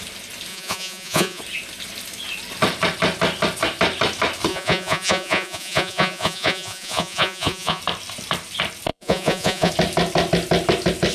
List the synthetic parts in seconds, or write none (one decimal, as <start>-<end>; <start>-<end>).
0.5-1.4; 4.5-7.8; 8.9-9.7